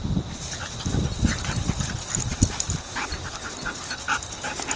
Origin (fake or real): real